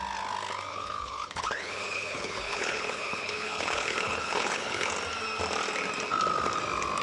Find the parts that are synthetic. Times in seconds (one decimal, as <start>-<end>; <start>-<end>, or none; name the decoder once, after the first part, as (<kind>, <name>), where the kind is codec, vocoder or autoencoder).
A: 0.7-4.9 (codec, HILCodec)